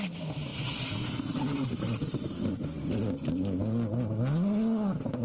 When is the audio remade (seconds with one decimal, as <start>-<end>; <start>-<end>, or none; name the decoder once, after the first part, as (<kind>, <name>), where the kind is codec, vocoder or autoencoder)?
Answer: none